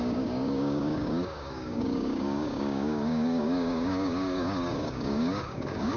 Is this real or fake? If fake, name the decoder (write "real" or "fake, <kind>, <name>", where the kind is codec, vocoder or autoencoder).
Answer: fake, codec, DAC